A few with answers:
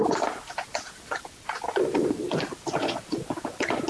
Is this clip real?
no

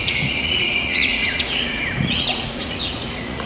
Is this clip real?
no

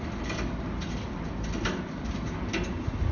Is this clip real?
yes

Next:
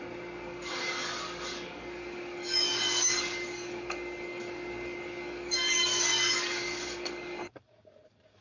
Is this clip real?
no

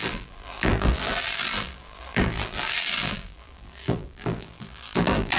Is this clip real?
no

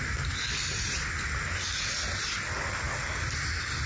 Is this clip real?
yes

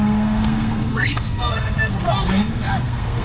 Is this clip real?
no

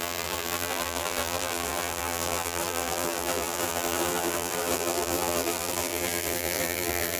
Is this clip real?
no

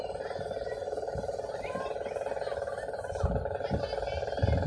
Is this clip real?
yes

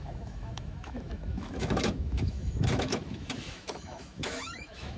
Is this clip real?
no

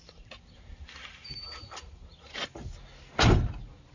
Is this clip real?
yes